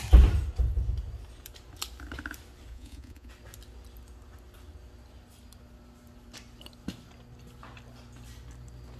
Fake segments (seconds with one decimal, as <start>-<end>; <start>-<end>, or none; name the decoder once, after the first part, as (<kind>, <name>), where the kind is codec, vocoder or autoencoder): 2.7-3.3 (vocoder, Vocos)